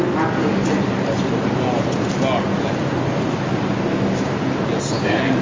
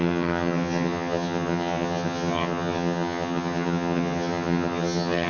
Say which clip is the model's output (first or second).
second